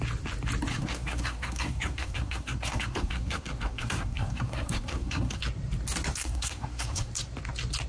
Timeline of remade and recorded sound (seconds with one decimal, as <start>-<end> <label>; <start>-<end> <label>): 0.0-0.7 recorded; 0.7-5.4 remade; 5.4-6.2 recorded; 6.2-7.1 remade; 7.1-7.9 recorded